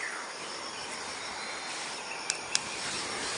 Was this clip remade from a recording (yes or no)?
no